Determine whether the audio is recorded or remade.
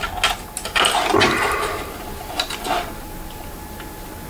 recorded